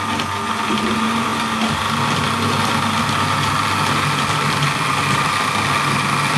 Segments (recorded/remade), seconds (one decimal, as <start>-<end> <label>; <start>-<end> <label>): 0.0-6.4 recorded